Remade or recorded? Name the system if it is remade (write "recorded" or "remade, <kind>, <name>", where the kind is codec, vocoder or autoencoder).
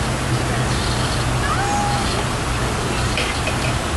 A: recorded